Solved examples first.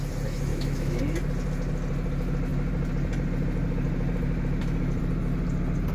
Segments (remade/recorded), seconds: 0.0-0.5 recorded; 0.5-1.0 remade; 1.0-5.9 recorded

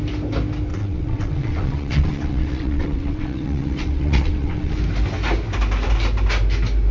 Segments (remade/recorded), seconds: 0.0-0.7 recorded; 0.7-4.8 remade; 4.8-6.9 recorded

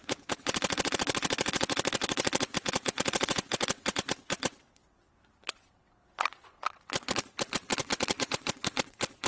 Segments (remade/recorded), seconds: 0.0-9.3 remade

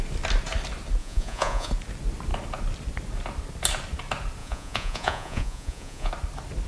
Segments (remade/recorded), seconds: 0.0-1.0 recorded; 1.0-1.7 remade; 1.7-4.4 recorded; 4.4-6.1 remade; 6.1-6.7 recorded

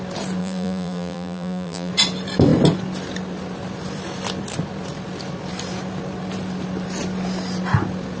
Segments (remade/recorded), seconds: 0.0-0.4 recorded; 0.4-1.9 remade; 1.9-8.2 recorded